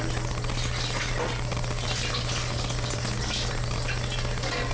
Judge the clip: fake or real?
real